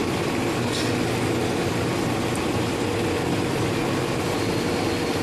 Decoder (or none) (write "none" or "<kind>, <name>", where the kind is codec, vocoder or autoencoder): none